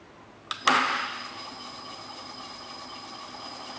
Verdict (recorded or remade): recorded